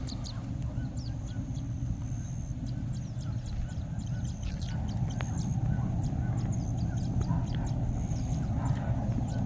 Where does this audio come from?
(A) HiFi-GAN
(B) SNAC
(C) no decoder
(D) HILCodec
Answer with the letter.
C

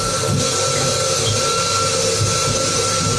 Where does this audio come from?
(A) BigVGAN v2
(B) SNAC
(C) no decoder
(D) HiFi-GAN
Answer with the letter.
C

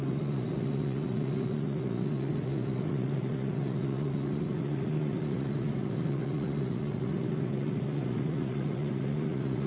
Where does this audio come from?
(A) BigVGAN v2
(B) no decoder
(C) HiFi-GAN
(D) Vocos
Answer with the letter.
D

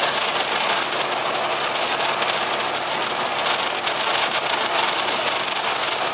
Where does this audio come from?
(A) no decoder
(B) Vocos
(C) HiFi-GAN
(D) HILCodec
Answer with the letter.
A